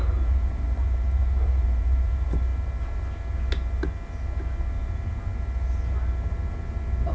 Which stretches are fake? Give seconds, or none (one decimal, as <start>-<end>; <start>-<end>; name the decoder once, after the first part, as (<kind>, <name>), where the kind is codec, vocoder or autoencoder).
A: 0.0-2.5 (vocoder, BigVGAN v2)